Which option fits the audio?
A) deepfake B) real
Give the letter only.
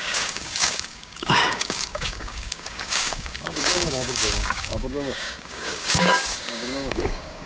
A